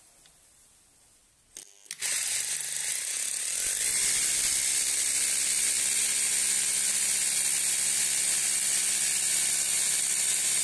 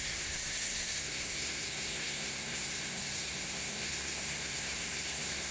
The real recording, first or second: first